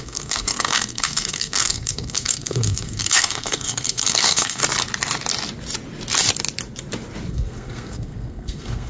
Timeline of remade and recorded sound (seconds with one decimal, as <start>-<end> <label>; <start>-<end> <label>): 0.0-4.6 remade; 4.6-7.3 recorded; 7.3-8.9 remade